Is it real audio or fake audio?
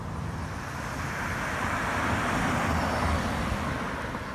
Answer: real